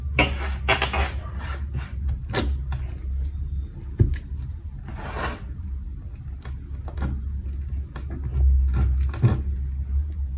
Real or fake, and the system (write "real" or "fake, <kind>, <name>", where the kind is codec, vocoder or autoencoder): real